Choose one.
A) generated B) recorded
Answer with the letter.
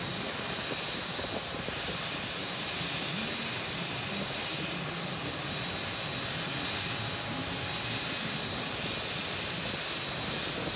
B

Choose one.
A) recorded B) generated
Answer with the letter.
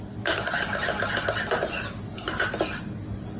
A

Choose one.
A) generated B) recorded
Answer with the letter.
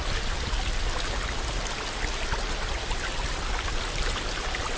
B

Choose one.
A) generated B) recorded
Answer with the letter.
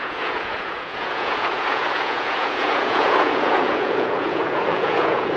A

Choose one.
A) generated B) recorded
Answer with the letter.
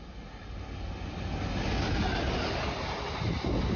B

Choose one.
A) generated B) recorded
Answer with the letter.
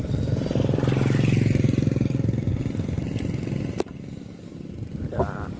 B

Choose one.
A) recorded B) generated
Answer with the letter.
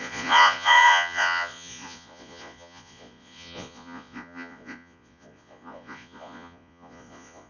B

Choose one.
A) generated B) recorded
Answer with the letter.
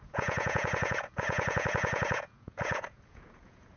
A